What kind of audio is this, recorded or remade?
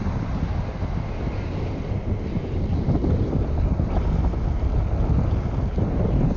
recorded